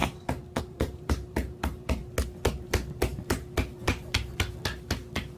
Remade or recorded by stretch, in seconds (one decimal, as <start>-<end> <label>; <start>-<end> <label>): 0.0-0.6 recorded; 0.6-2.0 remade; 2.0-5.4 recorded